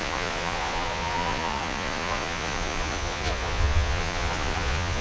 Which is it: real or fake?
fake